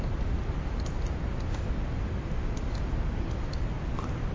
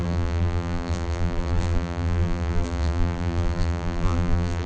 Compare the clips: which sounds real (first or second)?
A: first